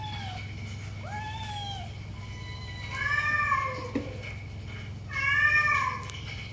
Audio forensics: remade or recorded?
recorded